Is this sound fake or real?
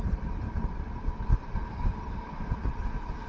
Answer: real